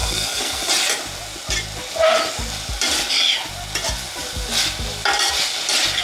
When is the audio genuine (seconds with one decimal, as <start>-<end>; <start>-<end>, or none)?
0.7-6.0